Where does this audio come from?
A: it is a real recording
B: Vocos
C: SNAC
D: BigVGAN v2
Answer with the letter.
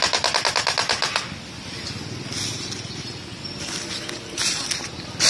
A